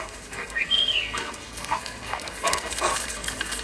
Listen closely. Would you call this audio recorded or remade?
remade